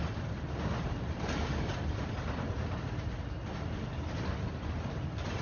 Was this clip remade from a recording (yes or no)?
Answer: no